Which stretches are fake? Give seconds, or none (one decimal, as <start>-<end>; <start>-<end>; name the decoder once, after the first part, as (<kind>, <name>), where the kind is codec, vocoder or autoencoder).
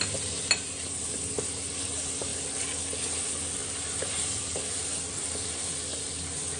none